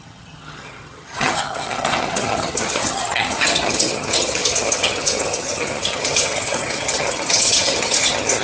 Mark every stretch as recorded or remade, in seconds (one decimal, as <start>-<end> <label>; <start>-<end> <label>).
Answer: 0.0-8.4 remade